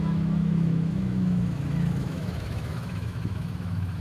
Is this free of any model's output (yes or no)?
no